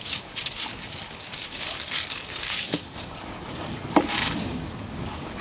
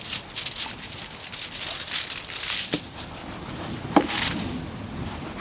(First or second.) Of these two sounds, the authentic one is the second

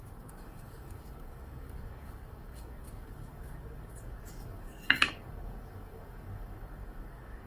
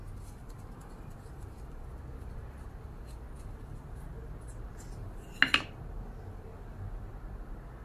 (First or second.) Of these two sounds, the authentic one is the second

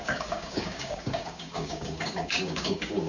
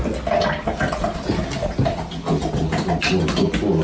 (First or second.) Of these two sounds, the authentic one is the second